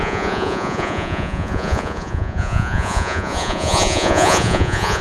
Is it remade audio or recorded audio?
remade